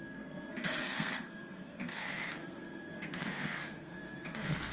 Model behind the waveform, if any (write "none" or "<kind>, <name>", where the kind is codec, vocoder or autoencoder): codec, SNAC